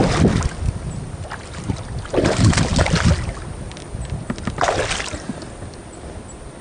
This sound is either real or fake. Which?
real